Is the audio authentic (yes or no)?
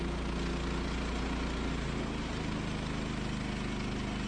yes